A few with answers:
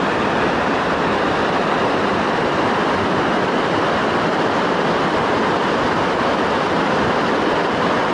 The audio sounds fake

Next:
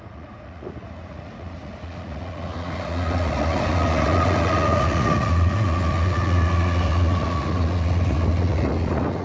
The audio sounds fake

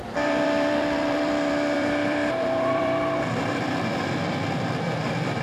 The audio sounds fake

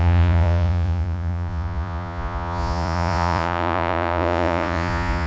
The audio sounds fake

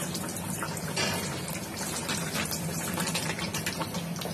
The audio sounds real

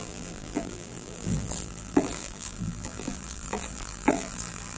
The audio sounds fake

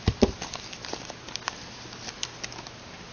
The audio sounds real